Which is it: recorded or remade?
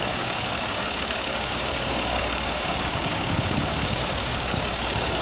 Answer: remade